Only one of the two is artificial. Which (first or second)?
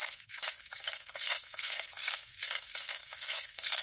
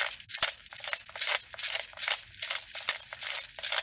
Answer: first